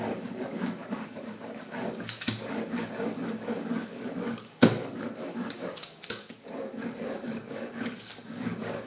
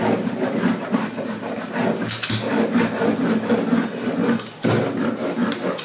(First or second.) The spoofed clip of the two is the first